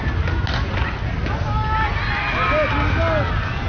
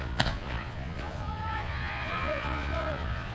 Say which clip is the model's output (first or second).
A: second